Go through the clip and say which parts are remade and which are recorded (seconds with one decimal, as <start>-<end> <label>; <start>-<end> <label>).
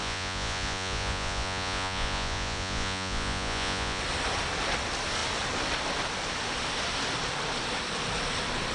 0.0-4.0 remade; 4.0-8.7 recorded